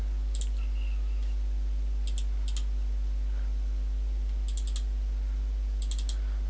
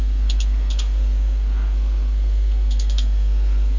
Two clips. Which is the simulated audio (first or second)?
second